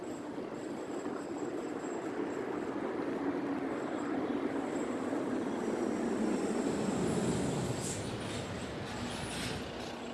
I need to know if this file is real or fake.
real